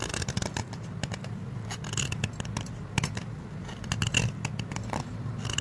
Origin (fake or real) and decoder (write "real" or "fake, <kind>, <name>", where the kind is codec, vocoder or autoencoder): real